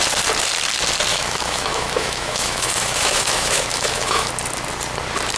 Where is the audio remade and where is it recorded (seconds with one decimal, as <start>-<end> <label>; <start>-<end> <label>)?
0.0-1.1 recorded; 1.1-4.3 remade; 4.3-5.4 recorded